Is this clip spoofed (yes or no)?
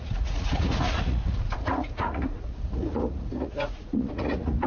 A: yes